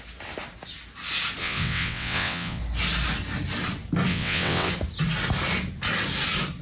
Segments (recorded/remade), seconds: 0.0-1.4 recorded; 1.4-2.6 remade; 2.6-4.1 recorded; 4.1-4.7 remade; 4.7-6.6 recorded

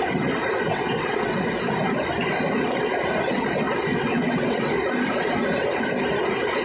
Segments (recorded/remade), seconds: 0.0-0.7 recorded; 0.7-1.6 remade; 1.6-3.9 recorded; 3.9-4.7 remade; 4.7-6.6 recorded

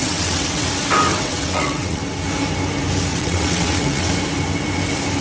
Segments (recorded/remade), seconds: 0.0-0.7 remade; 0.7-1.1 recorded; 1.1-2.0 remade; 2.0-3.1 recorded; 3.1-4.1 remade; 4.1-5.2 recorded

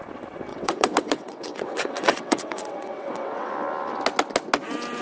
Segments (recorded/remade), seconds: 0.0-0.5 recorded; 0.5-3.5 remade; 3.5-5.0 recorded

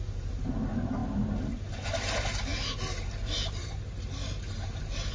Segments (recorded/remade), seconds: 0.0-5.1 recorded